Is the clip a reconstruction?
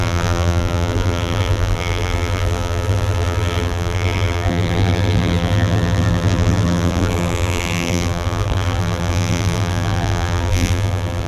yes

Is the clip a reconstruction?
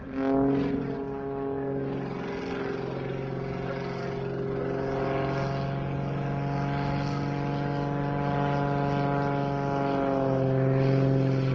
no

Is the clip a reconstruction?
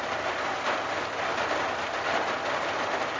no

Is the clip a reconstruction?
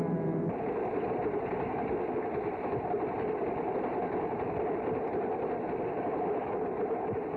no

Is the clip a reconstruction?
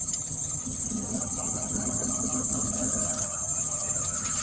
yes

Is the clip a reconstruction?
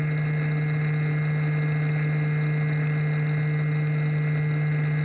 no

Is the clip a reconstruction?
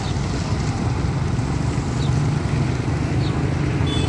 no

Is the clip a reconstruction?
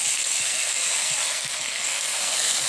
yes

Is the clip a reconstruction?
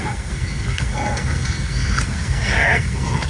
yes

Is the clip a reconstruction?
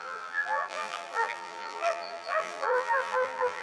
yes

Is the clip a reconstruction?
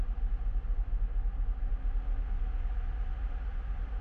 no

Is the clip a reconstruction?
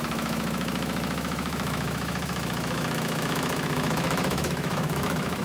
yes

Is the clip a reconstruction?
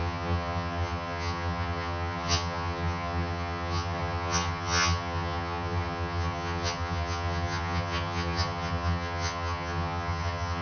yes